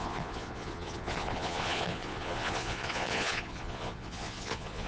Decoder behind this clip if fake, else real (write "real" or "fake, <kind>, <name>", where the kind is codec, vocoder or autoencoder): fake, vocoder, Vocos